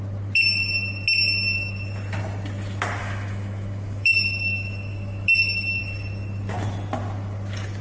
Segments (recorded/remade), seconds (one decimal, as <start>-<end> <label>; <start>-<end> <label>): 0.0-3.0 recorded; 3.0-5.8 remade; 5.8-7.8 recorded